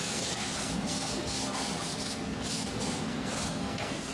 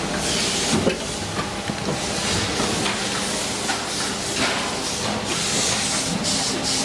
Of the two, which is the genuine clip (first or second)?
second